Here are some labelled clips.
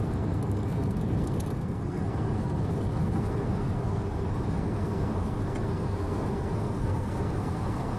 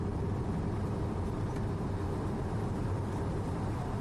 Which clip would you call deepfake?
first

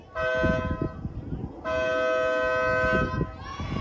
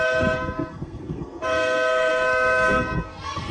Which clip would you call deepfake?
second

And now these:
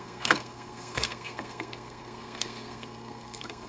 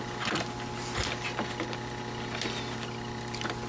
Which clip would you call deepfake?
first